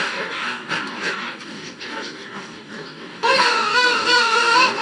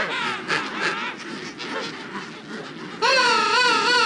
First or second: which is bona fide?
second